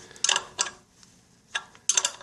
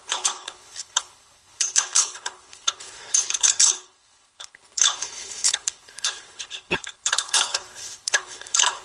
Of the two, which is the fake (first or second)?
second